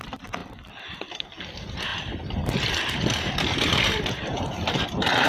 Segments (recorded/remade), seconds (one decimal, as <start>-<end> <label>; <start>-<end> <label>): 0.0-1.9 recorded; 1.9-5.3 remade